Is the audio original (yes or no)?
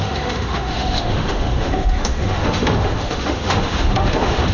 no